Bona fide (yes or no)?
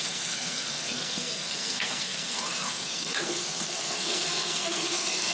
no